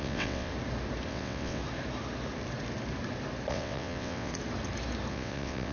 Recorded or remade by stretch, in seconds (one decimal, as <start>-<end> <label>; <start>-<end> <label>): 0.0-0.5 remade; 0.5-1.1 recorded; 1.1-1.6 remade; 1.6-3.5 recorded; 3.5-4.3 remade; 4.3-5.1 recorded; 5.1-5.7 remade